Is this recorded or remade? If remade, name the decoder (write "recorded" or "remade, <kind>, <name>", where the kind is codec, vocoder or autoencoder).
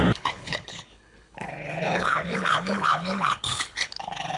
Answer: remade, codec, HILCodec